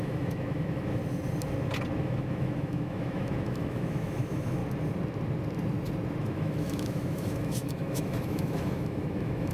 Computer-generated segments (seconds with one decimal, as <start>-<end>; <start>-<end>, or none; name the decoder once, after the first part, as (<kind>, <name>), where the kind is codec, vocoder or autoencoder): 0.0-1.0 (autoencoder, DAC-VAE); 2.0-4.6; 6.2-9.5